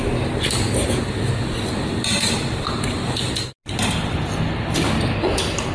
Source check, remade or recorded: recorded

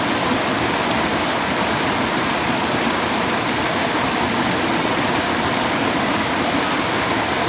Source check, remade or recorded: recorded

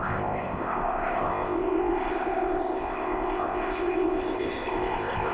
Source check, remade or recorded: remade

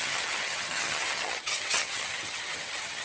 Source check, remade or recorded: remade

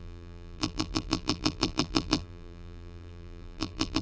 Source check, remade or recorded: remade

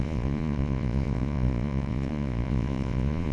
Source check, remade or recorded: remade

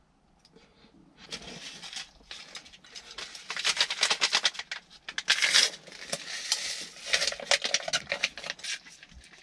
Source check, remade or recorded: recorded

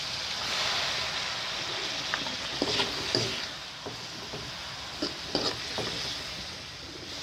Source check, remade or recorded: recorded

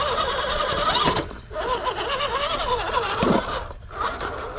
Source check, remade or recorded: recorded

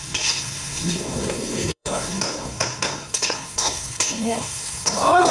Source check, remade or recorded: remade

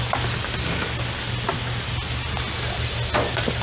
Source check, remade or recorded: recorded